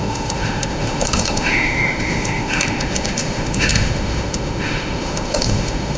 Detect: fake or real fake